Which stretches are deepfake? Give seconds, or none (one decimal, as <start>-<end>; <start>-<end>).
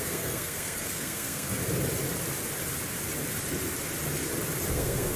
0.0-1.6; 4.7-5.2